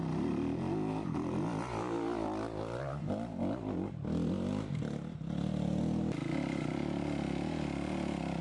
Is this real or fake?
real